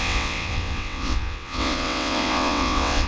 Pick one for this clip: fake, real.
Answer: fake